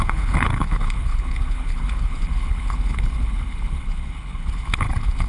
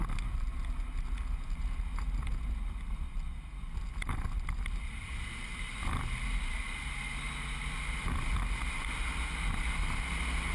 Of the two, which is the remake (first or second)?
first